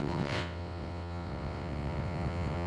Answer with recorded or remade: remade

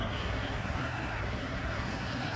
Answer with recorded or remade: remade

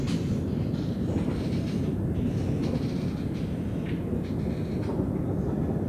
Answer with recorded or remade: recorded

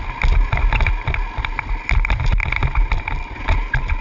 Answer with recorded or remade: recorded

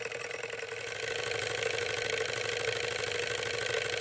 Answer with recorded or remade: recorded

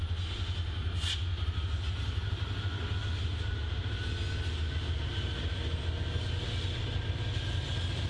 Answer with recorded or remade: recorded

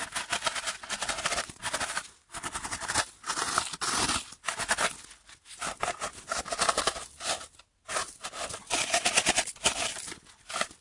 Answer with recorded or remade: recorded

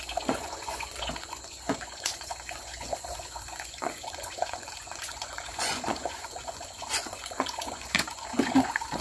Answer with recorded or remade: remade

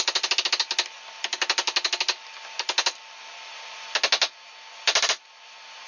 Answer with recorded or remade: recorded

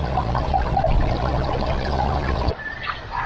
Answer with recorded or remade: remade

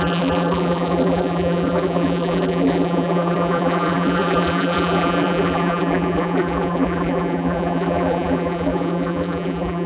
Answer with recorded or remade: remade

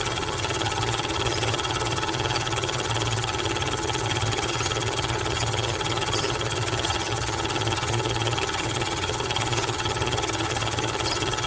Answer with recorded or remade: remade